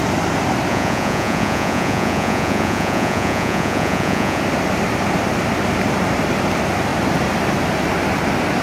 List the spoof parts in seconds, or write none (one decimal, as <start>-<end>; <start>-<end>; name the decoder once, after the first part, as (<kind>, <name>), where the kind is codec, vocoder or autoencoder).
0.7-4.4 (vocoder, Vocos)